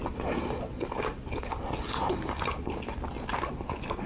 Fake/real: real